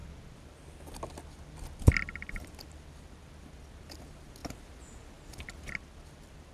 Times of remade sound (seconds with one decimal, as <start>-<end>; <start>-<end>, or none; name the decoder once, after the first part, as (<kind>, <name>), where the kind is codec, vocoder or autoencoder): none